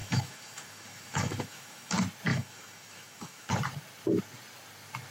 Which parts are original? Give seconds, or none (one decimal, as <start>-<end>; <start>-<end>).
1.9-2.3; 3.5-5.1